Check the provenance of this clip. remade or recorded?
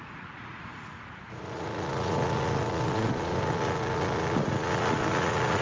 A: remade